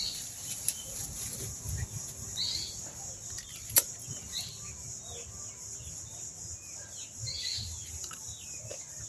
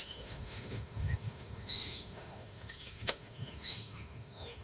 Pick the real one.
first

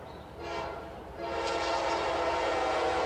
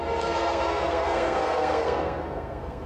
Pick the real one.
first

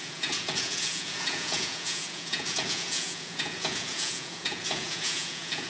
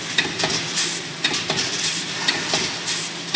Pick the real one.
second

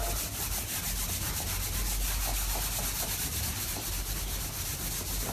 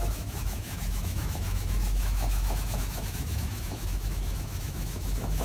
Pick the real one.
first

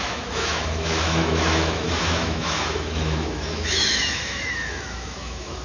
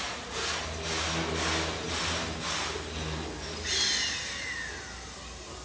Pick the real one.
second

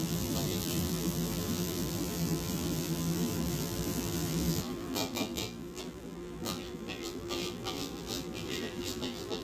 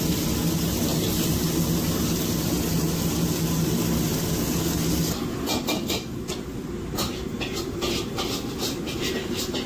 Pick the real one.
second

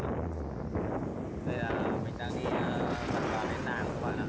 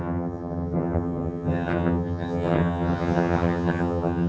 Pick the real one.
first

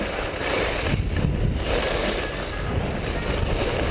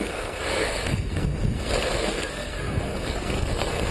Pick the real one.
first